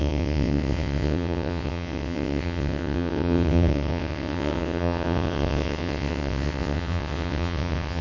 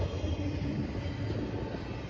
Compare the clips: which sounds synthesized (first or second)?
first